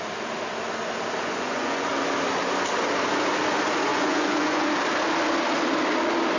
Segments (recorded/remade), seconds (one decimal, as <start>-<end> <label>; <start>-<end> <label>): 0.0-1.2 recorded; 1.2-1.9 remade; 1.9-3.9 recorded; 3.9-4.7 remade; 4.7-6.4 recorded